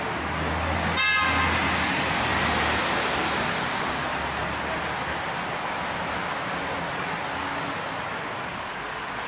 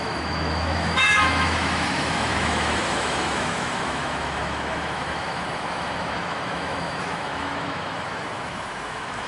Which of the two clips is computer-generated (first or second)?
second